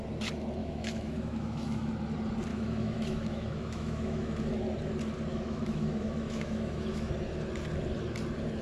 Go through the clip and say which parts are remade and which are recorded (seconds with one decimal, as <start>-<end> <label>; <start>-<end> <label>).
0.0-0.6 recorded; 0.6-1.9 remade; 1.9-2.5 recorded; 2.5-4.5 remade; 4.5-5.3 recorded; 5.3-7.1 remade; 7.1-8.6 recorded